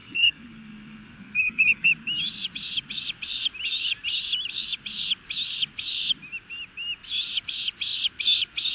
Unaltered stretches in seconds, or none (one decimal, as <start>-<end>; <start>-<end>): 1.9-8.7